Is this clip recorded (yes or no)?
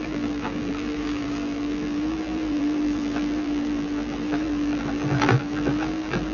no